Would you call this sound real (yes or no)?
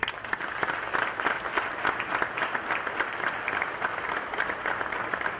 yes